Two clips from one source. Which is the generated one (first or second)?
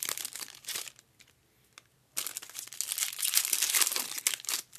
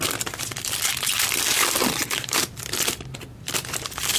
second